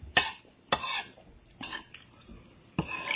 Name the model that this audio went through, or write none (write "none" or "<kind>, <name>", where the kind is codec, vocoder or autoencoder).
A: none